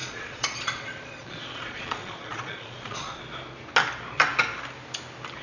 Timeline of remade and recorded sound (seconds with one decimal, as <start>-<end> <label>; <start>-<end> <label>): 0.0-3.2 remade; 3.2-5.4 recorded